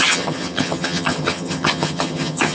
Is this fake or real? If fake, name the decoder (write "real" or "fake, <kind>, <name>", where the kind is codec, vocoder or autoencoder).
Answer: fake, vocoder, HiFi-GAN